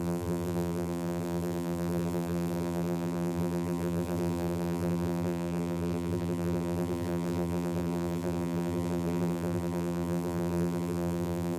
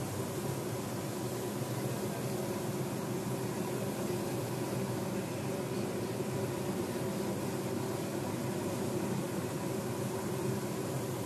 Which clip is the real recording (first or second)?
second